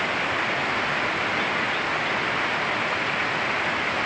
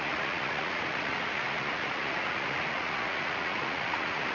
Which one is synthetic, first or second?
second